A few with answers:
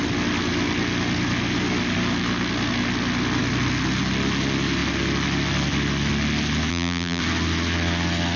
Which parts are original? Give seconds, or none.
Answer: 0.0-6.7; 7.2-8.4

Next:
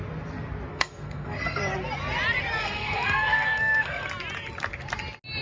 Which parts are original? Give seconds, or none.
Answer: 0.0-0.7; 1.6-2.6; 4.1-5.4

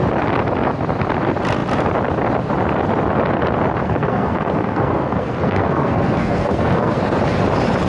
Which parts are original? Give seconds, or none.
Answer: 0.0-3.8; 7.0-7.9